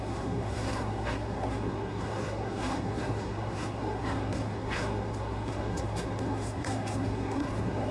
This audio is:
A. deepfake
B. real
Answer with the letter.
A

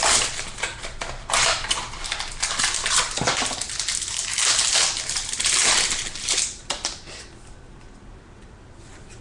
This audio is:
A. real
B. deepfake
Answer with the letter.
A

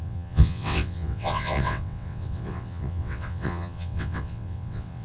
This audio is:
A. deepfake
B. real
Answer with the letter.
A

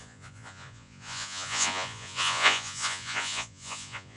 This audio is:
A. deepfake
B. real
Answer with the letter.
A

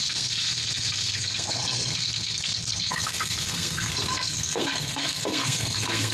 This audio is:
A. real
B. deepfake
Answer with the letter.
B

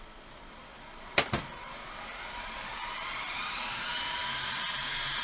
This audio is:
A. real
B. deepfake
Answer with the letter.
A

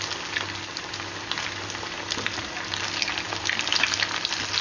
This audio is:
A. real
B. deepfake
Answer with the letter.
A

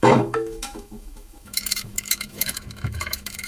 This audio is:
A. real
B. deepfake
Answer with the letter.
B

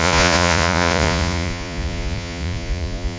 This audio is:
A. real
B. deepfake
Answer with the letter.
B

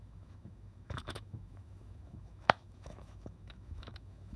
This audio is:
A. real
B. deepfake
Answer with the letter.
B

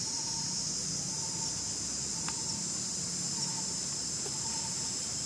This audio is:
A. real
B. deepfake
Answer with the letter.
A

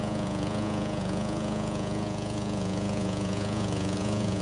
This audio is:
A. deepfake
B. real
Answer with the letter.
A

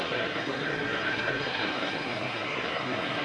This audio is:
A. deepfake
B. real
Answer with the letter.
A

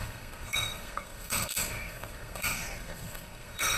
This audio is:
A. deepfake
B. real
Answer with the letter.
A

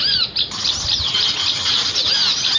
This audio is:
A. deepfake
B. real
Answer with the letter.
B